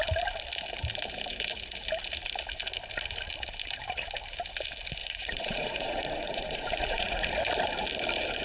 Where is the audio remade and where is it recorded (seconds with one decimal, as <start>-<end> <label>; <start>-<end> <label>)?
0.0-5.0 recorded; 5.0-7.3 remade; 7.3-8.4 recorded